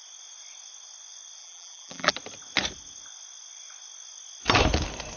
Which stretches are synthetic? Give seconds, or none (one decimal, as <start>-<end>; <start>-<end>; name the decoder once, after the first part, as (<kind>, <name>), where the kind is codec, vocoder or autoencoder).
1.4-2.1 (vocoder, BigVGAN v2)